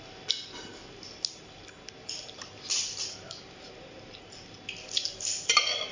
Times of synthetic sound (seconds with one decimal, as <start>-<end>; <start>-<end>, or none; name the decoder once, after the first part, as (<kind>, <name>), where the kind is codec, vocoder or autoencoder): none